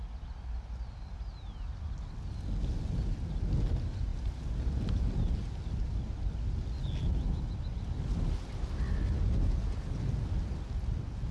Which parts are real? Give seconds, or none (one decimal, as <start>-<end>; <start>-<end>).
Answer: 0.0-4.1; 4.6-11.3